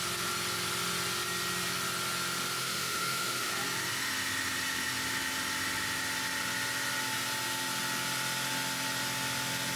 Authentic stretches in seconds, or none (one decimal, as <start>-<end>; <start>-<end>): 0.0-2.6; 3.5-9.8